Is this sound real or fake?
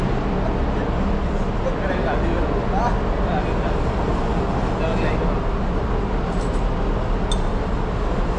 real